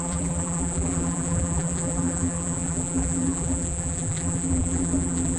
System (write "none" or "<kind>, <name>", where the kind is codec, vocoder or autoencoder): vocoder, BigVGAN v2